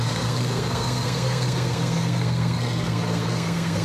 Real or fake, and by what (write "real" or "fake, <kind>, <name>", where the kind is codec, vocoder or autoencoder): fake, codec, SNAC